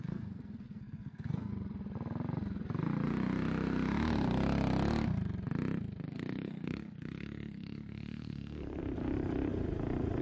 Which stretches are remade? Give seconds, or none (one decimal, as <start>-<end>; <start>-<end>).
0.0-1.5; 6.1-8.8